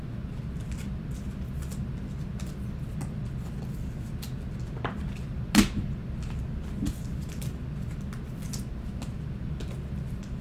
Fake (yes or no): no